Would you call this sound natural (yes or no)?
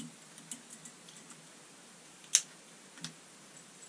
yes